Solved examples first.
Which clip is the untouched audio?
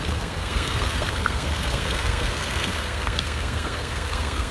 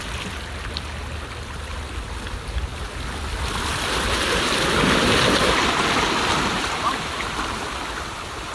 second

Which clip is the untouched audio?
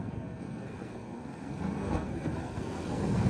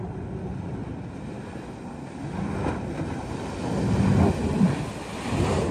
second